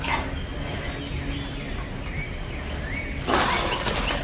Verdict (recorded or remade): recorded